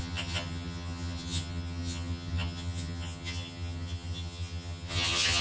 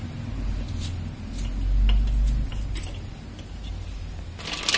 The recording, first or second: second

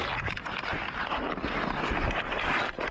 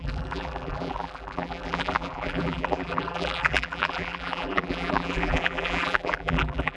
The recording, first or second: first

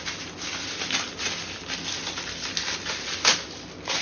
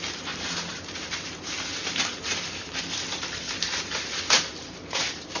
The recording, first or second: first